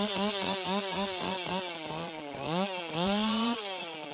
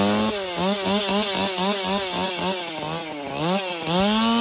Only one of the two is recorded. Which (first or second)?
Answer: second